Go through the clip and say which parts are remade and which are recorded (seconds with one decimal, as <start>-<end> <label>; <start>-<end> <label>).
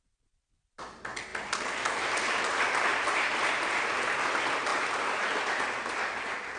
0.0-2.9 recorded; 2.9-3.7 remade; 3.7-4.7 recorded; 4.7-5.6 remade; 5.6-6.6 recorded